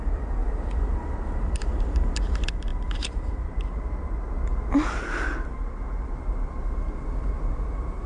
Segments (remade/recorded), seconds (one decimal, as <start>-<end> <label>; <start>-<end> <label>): 0.0-0.4 recorded; 0.4-1.1 remade; 1.1-2.7 recorded; 2.7-3.7 remade; 3.7-8.1 recorded